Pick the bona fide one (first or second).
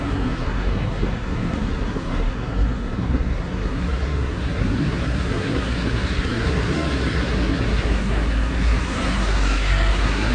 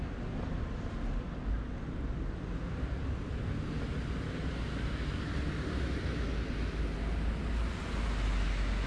second